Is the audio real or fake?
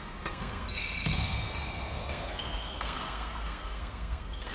fake